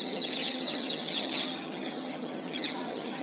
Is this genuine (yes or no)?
no